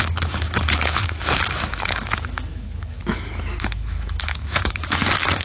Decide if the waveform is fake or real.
fake